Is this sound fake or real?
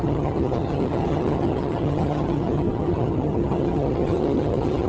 fake